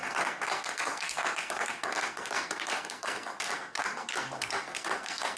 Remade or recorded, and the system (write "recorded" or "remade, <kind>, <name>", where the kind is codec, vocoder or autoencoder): remade, codec, SNAC